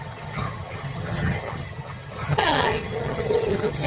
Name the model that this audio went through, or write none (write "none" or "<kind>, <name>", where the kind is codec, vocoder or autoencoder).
vocoder, HiFi-GAN